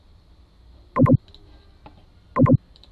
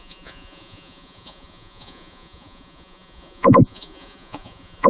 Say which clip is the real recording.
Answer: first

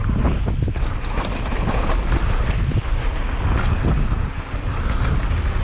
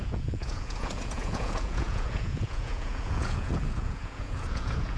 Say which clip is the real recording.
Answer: first